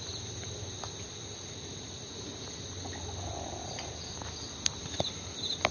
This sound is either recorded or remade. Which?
recorded